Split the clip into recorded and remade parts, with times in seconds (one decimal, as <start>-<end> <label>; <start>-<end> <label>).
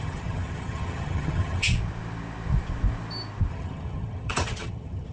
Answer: 0.0-1.7 remade; 1.7-3.5 recorded; 3.5-5.1 remade